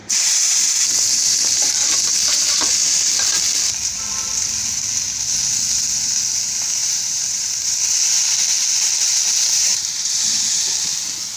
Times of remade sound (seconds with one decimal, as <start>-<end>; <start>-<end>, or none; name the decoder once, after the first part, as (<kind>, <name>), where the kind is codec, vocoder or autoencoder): 0.0-3.4 (vocoder, BigVGAN v2); 6.8-7.7; 9.6-10.6

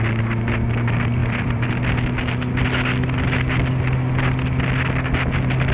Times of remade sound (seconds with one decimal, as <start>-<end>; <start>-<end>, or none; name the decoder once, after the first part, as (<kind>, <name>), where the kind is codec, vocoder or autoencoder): 1.2-1.7 (vocoder, BigVGAN v2)

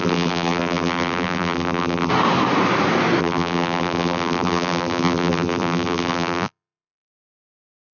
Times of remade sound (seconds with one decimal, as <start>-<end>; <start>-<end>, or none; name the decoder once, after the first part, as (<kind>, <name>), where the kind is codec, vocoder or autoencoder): 0.0-2.1 (vocoder, BigVGAN v2); 3.2-7.9

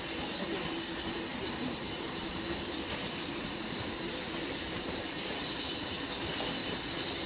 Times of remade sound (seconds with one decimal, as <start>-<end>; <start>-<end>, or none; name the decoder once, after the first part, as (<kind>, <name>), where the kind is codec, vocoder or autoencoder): 1.3-5.7 (vocoder, BigVGAN v2); 6.6-7.3

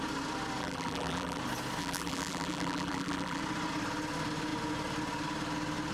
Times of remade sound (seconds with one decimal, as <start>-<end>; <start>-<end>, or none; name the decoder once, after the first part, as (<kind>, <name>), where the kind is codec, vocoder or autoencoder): 0.6-1.4 (vocoder, BigVGAN v2); 1.8-3.4